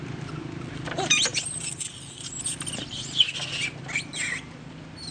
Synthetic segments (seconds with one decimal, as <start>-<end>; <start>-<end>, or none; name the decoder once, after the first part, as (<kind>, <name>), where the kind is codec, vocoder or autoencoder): none